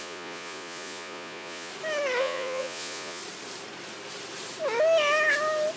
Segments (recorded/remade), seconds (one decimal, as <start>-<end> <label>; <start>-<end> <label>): 0.0-1.7 remade; 1.7-2.2 recorded; 2.2-3.2 remade; 3.2-5.8 recorded